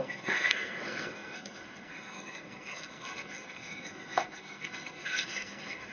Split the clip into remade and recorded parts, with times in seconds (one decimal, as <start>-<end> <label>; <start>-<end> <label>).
0.0-5.9 remade